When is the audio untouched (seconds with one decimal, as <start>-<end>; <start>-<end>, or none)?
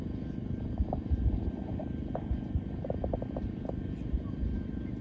0.0-5.0